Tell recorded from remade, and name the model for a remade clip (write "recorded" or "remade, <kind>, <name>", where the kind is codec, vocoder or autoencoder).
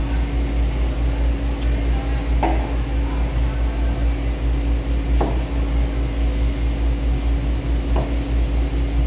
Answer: recorded